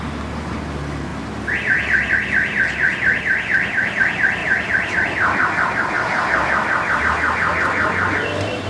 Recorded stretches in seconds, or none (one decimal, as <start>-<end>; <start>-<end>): 0.0-3.5; 4.0-4.4; 7.0-8.7